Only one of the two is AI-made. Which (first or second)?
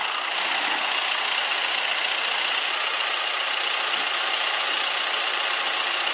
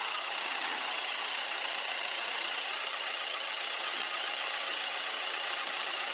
second